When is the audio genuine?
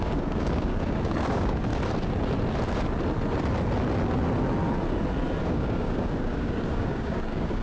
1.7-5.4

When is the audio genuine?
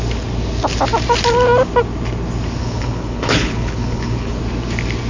0.0-2.6; 4.4-5.1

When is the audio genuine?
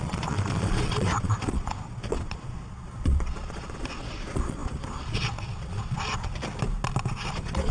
6.3-7.3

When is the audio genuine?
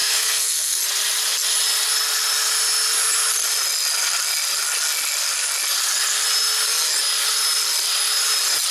0.8-8.7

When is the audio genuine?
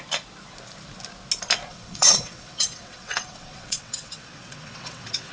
0.0-1.7